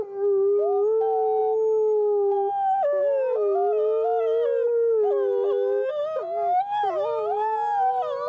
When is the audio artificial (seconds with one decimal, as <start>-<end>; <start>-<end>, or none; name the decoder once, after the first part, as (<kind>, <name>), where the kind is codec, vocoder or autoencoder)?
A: none